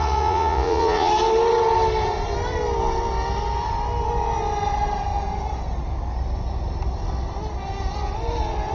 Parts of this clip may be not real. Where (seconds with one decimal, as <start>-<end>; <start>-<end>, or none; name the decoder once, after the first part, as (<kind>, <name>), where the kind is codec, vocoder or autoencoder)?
0.0-1.1 (vocoder, Vocos)